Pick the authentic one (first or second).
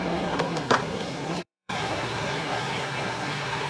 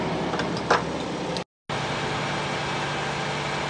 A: second